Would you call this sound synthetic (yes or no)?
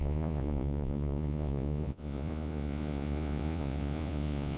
yes